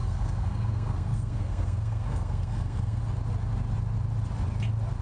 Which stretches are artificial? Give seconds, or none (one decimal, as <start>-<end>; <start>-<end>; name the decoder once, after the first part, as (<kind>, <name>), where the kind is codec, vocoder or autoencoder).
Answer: 0.0-3.0 (codec, SNAC)